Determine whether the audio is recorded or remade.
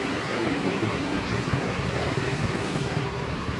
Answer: remade